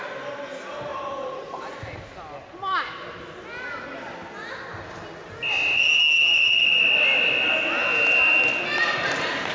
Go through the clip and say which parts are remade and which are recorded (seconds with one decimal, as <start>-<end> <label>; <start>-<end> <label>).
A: 0.0-0.9 recorded; 0.9-1.8 remade; 1.8-9.5 recorded